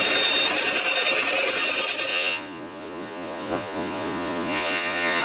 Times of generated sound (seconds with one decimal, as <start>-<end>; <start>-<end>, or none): 2.1-5.2